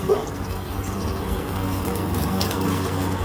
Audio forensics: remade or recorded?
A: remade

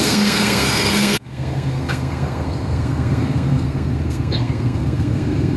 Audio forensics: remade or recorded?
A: remade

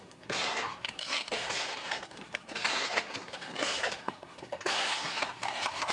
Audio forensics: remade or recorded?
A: remade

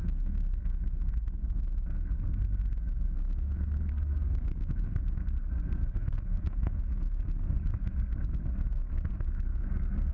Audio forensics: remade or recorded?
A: remade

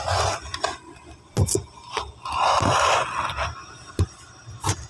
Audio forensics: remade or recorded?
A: recorded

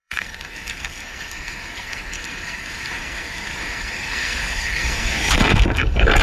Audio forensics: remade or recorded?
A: remade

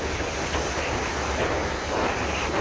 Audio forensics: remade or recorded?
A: recorded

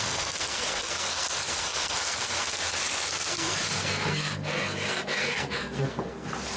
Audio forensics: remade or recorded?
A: remade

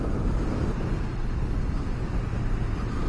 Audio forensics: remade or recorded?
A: recorded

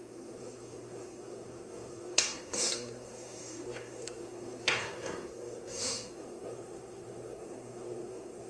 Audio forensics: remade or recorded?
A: remade